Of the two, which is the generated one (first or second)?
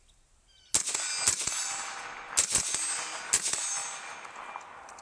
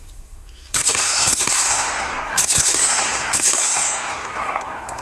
second